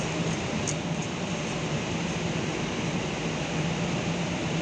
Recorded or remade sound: remade